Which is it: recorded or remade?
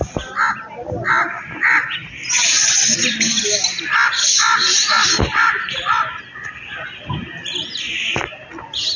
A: recorded